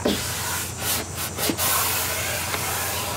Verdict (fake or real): real